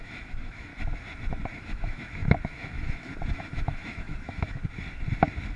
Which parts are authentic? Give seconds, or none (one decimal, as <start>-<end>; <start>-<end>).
0.7-1.6; 4.6-5.6